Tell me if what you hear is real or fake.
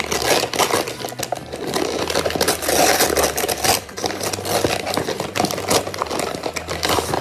real